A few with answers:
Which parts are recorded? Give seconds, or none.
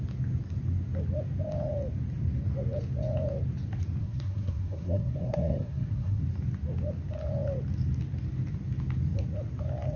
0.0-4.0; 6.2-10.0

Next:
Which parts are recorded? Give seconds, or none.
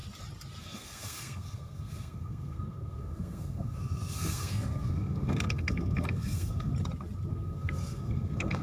0.0-0.6; 6.7-7.3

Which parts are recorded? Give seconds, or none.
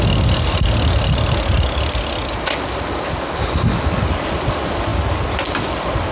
0.0-6.1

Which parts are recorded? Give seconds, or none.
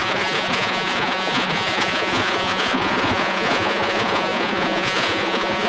none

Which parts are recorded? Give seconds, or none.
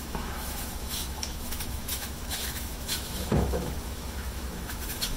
none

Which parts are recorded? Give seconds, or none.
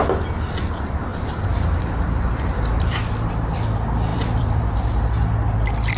0.0-1.1; 3.3-4.1; 4.9-6.0